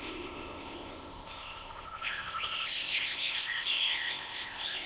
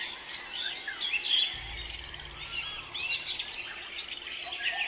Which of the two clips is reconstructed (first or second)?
first